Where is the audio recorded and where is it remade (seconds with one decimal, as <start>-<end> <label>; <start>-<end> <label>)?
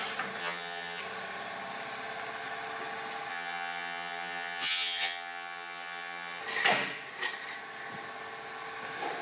0.0-0.4 recorded; 0.4-1.0 remade; 1.0-3.3 recorded; 3.3-6.4 remade; 6.4-9.2 recorded